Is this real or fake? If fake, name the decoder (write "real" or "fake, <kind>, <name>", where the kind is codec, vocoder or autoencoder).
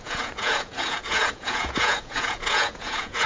fake, vocoder, Vocos